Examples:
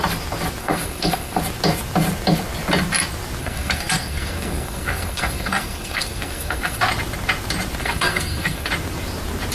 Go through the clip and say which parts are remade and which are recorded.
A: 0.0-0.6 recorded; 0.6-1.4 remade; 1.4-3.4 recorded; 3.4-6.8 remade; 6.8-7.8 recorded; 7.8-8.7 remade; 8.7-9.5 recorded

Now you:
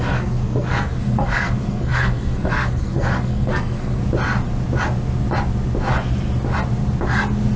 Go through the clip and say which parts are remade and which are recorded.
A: 0.0-4.0 remade; 4.0-7.6 recorded

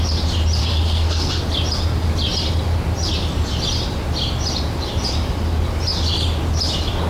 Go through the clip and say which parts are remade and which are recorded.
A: 0.0-0.6 recorded; 0.6-1.3 remade; 1.3-7.1 recorded

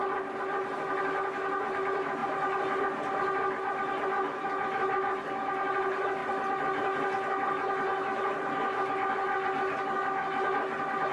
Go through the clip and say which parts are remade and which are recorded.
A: 0.0-11.1 recorded